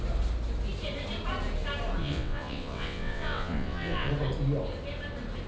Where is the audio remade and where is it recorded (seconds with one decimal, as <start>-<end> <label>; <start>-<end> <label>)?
0.0-2.0 recorded; 2.0-4.1 remade; 4.1-5.5 recorded